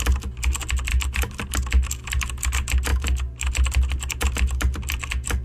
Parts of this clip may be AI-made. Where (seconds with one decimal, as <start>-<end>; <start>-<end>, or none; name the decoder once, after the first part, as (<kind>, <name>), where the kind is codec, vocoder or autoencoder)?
none